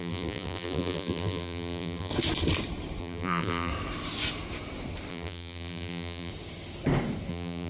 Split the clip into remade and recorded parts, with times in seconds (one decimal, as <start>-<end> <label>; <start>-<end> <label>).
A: 0.0-2.1 remade; 2.1-3.0 recorded; 3.0-3.7 remade; 3.7-5.1 recorded; 5.1-6.3 remade; 6.3-7.3 recorded; 7.3-7.7 remade